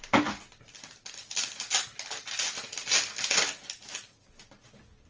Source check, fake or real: real